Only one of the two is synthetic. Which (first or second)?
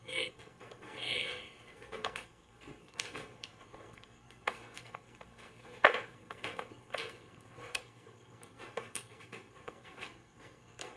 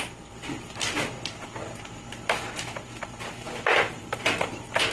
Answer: first